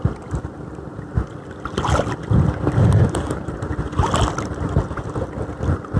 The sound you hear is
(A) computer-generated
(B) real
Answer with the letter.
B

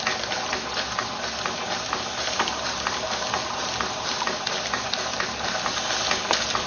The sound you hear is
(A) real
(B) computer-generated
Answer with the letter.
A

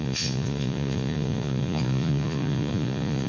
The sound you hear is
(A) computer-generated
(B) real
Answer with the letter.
A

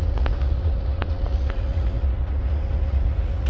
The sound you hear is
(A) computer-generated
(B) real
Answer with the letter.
A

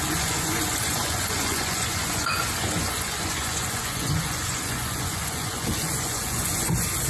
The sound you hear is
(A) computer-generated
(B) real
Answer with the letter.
A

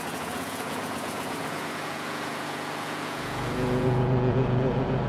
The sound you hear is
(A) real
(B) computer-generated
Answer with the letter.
B